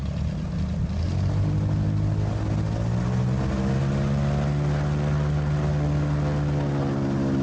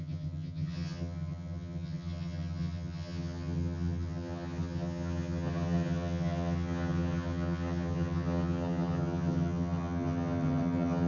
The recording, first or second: first